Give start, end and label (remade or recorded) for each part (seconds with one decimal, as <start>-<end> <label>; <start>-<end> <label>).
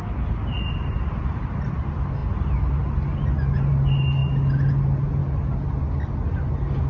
0.0-6.9 recorded